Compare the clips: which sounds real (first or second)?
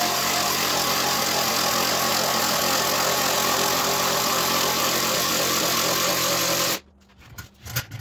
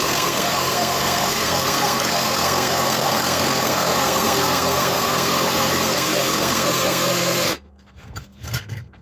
first